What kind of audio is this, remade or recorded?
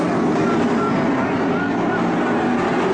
recorded